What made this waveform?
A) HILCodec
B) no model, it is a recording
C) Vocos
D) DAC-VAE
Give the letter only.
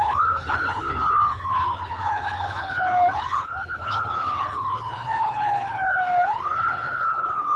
A